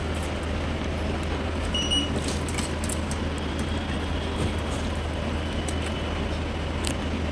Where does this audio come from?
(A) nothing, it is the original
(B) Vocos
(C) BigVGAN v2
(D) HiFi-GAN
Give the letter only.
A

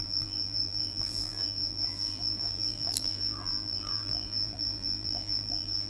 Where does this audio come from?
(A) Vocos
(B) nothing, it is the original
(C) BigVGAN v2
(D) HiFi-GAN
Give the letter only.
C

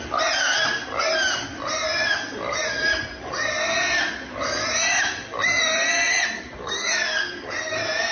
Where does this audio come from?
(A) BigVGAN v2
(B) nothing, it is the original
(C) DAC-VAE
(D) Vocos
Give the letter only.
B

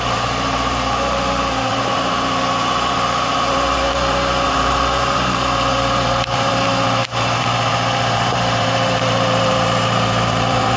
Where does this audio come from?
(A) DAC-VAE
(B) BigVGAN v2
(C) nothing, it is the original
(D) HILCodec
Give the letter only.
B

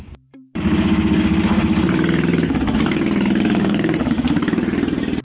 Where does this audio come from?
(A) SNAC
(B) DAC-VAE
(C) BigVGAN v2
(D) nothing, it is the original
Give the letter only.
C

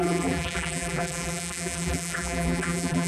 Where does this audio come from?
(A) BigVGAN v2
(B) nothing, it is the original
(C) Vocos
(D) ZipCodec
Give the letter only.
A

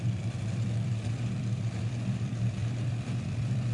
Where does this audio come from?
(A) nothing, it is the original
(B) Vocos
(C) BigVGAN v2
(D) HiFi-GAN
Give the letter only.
C